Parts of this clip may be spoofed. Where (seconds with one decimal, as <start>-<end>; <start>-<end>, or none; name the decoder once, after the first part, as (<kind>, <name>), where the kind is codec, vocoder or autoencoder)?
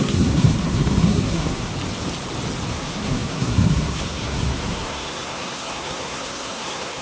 0.0-1.7 (codec, SNAC); 2.7-7.0